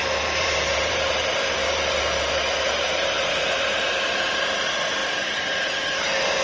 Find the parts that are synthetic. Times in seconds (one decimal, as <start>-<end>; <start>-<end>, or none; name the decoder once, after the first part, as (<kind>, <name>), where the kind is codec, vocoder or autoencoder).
0.0-3.8 (vocoder, BigVGAN v2)